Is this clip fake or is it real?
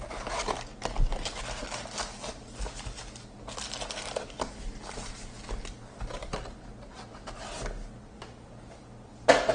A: real